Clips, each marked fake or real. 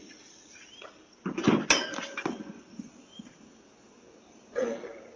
real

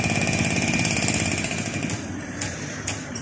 real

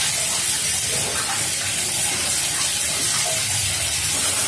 real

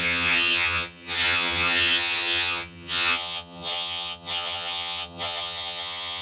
fake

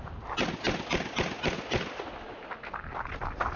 real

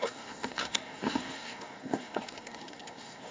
fake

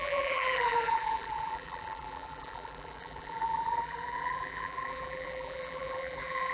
fake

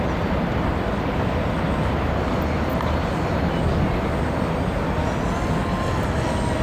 real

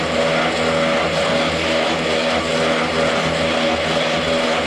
real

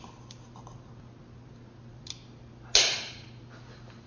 real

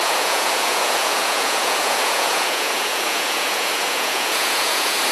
fake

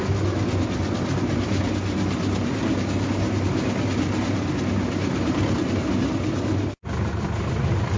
real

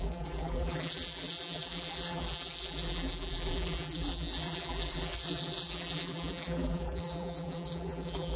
fake